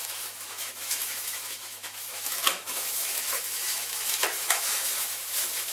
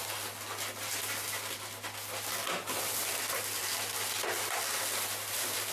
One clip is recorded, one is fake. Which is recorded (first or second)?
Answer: second